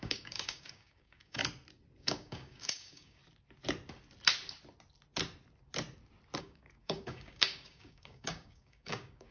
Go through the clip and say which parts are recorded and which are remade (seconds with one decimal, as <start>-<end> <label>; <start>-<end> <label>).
0.0-1.4 remade; 1.4-2.0 recorded; 2.0-3.2 remade; 3.2-6.4 recorded; 6.4-9.3 remade